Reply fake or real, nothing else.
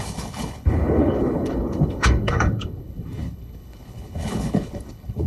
fake